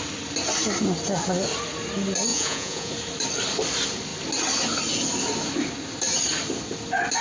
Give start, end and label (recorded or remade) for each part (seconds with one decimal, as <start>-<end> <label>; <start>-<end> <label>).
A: 0.0-2.3 recorded; 2.3-2.9 remade; 2.9-7.2 recorded